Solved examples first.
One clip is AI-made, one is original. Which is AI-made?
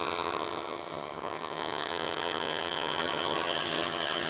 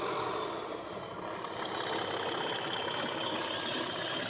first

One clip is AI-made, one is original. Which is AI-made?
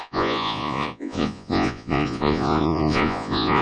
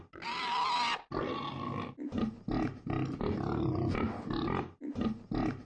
first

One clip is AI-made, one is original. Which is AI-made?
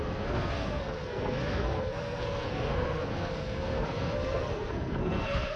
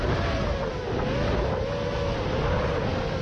first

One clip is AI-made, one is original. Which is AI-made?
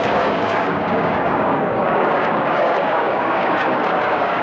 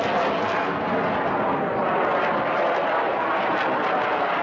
first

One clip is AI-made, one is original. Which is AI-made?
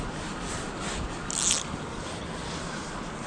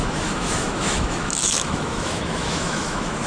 second